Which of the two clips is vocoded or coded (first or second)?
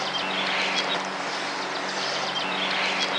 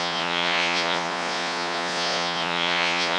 second